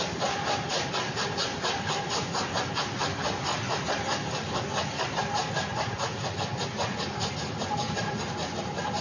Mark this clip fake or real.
real